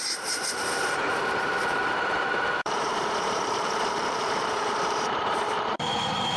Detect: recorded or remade remade